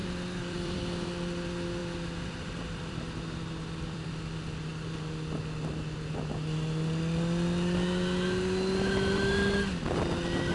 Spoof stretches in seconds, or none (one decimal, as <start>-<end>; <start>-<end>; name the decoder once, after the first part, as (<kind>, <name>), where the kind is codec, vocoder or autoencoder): 0.0-0.8 (vocoder, BigVGAN v2); 1.8-4.1